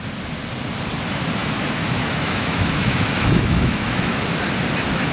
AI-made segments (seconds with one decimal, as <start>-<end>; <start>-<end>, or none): 1.4-4.2

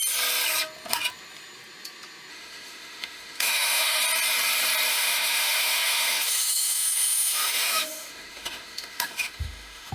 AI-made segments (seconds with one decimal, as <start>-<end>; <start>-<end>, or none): 2.3-4.0; 4.9-9.9

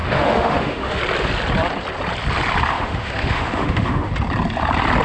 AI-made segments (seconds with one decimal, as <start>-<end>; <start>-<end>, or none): 0.0-1.0; 2.7-4.1